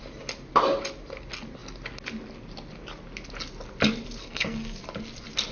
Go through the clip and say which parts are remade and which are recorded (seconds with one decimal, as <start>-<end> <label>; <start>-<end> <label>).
0.0-4.2 recorded; 4.2-4.8 remade; 4.8-5.5 recorded